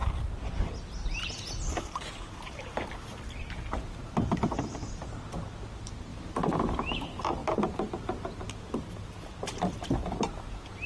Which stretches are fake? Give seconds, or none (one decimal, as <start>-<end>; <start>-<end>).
6.1-6.6